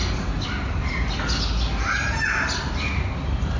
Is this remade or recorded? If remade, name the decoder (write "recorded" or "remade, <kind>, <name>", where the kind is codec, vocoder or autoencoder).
recorded